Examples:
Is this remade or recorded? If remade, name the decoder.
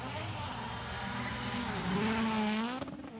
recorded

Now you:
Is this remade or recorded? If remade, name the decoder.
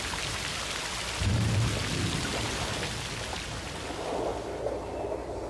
recorded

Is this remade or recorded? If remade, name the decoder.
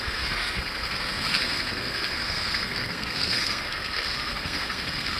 remade, codec, SNAC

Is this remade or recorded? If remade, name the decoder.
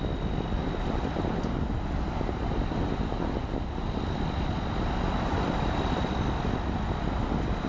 recorded